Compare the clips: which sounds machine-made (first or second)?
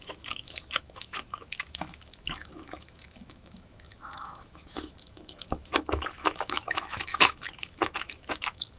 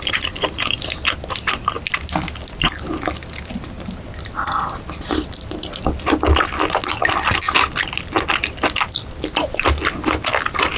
first